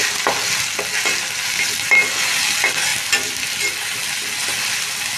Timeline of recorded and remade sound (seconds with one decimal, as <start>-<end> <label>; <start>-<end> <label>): 0.0-5.2 recorded